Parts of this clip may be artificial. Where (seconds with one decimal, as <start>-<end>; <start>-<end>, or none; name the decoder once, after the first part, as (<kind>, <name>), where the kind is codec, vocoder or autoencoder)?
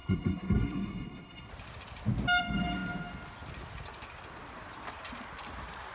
0.0-1.5 (codec, SNAC)